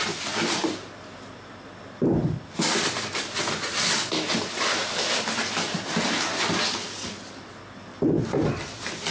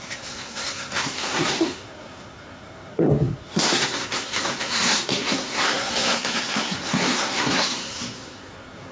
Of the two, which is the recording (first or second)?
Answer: first